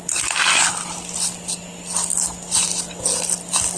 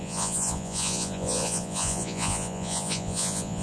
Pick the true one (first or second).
first